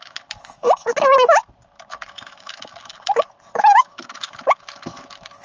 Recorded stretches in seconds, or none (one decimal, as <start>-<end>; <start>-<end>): 1.4-2.1; 2.9-3.6

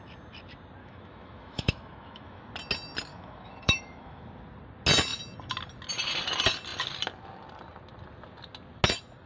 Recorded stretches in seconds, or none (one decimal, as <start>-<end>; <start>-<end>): 0.0-0.8; 2.4-3.1; 4.2-9.3

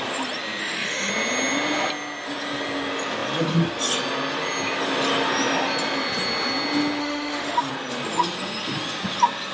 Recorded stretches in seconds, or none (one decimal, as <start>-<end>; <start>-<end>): 0.0-0.6; 1.1-7.0; 7.7-9.5

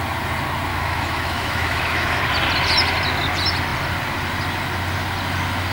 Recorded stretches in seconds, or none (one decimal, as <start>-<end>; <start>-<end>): 0.0-0.7; 2.2-5.7

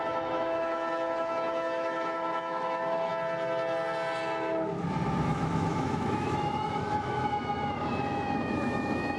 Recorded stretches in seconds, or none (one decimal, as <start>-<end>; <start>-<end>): 3.1-5.3

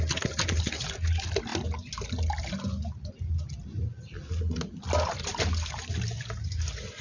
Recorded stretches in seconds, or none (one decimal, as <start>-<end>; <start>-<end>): 0.0-7.0

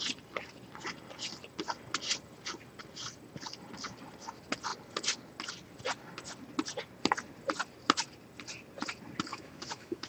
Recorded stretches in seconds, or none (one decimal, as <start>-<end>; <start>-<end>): 0.0-9.3